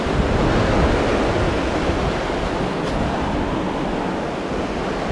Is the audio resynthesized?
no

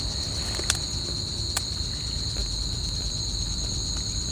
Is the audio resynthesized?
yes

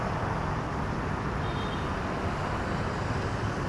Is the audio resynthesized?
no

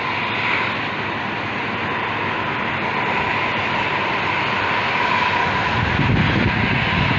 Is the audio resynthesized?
no